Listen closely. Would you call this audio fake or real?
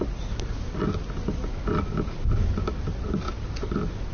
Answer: real